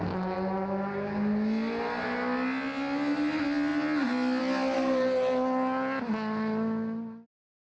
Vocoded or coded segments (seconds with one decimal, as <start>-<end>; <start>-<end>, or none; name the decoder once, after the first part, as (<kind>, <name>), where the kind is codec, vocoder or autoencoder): none